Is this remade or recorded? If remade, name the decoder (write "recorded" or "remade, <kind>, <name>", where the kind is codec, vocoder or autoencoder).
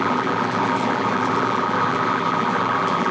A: remade, vocoder, BigVGAN v2